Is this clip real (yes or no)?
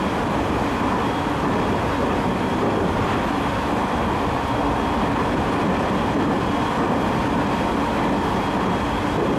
yes